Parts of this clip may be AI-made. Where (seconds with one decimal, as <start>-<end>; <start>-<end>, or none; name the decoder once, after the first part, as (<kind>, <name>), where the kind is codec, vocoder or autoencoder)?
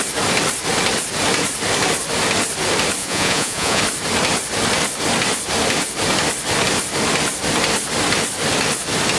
3.0-3.8 (vocoder, Vocos)